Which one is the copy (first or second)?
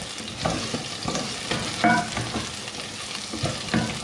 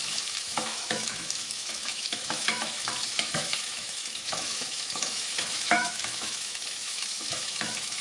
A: second